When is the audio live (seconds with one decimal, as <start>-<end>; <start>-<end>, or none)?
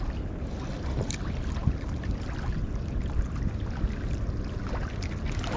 0.0-5.6